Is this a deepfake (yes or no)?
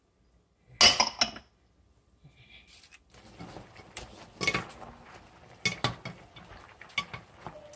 no